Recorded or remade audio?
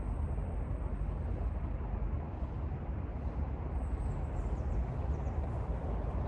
recorded